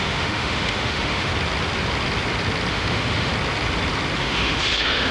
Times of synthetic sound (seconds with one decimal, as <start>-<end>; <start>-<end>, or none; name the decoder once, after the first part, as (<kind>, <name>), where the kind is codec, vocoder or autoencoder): 0.0-1.3 (autoencoder, DAC-VAE); 2.7-3.3; 4.2-5.1